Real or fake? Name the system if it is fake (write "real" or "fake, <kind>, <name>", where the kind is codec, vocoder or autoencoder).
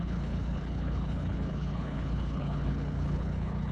fake, codec, HILCodec